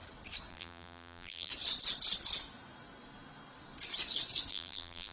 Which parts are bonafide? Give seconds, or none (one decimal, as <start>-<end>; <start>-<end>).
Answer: 0.0-0.5; 1.5-4.5